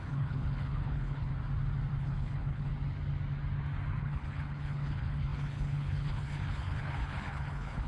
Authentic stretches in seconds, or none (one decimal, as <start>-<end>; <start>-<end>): 1.3-2.0; 2.7-4.0